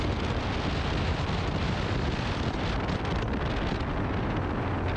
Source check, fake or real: real